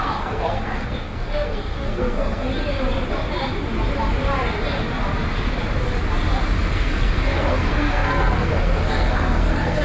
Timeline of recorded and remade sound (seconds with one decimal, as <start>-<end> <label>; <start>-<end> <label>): 0.0-2.5 remade; 2.5-6.7 recorded; 6.7-9.8 remade